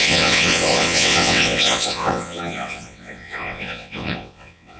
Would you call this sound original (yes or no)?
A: no